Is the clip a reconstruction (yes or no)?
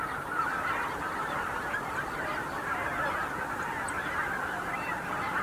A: yes